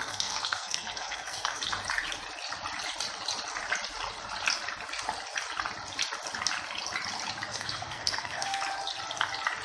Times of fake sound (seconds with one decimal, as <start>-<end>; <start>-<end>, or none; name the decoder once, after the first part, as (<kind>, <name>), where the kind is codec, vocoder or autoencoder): 0.0-1.6 (codec, SNAC); 7.5-8.6